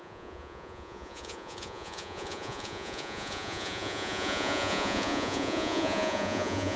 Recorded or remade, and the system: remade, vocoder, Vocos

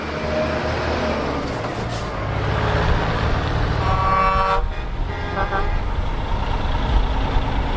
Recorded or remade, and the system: recorded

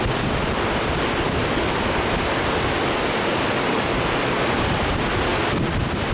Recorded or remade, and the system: recorded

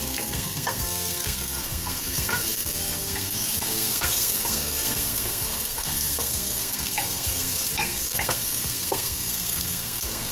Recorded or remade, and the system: remade, codec, SNAC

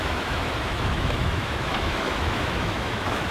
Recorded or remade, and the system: remade, autoencoder, DAC-VAE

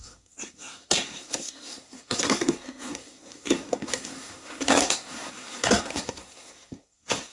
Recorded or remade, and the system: remade, codec, SNAC